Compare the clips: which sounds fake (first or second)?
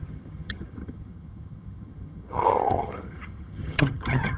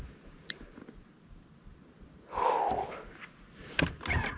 first